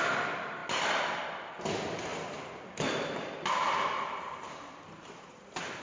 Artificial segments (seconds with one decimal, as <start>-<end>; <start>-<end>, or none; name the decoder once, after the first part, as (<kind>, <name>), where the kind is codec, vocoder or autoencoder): 2.1-5.8 (vocoder, BigVGAN v2)

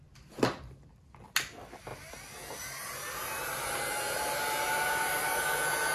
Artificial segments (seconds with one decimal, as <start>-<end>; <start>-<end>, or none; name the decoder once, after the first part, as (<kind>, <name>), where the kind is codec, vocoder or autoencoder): none

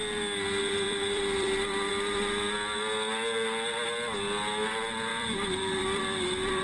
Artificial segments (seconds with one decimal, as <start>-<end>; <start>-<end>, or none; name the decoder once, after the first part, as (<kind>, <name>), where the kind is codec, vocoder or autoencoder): 0.6-1.9 (vocoder, BigVGAN v2); 5.1-6.0

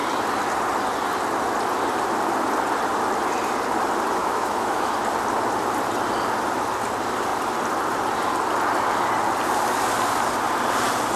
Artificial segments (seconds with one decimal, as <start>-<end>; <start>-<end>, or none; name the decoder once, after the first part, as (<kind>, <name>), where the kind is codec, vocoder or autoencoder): 4.2-4.9 (autoencoder, DAC-VAE)

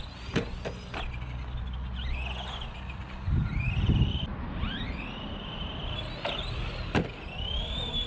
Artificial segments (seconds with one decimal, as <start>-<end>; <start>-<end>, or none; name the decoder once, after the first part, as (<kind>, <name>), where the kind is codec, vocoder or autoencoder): none

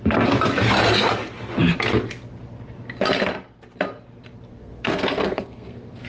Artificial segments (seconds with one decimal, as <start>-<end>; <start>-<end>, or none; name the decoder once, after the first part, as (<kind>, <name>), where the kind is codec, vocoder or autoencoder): 4.5-6.1 (codec, SNAC)